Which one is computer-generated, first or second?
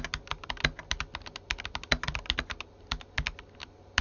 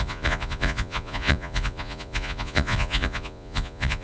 second